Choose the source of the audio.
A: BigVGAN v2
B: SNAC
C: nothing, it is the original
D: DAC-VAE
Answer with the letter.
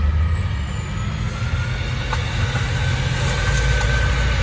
C